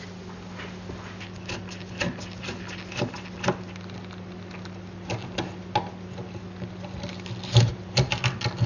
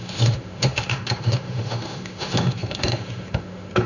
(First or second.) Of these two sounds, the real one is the first